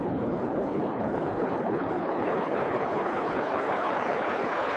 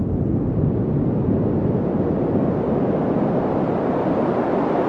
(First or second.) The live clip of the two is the second